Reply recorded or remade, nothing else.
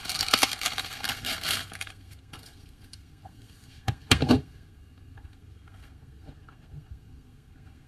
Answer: remade